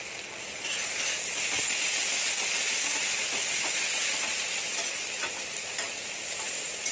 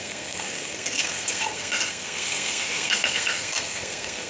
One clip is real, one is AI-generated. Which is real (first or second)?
first